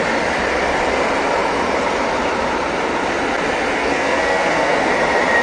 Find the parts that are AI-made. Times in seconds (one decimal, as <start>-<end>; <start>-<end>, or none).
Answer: 3.8-4.9